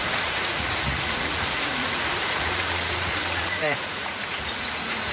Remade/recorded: remade